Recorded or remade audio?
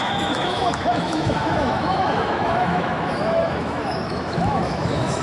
remade